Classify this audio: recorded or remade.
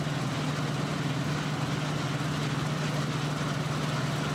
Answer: recorded